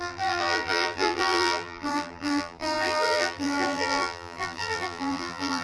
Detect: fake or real fake